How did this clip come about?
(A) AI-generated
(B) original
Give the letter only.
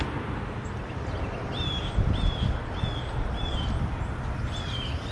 B